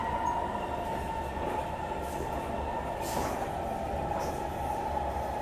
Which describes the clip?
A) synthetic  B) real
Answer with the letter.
B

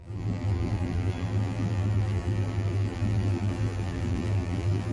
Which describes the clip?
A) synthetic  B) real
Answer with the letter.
A